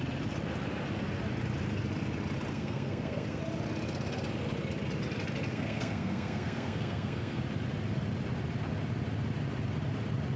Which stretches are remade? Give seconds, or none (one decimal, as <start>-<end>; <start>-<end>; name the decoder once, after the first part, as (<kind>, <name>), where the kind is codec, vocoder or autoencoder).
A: 2.5-3.4 (codec, SNAC); 5.5-7.4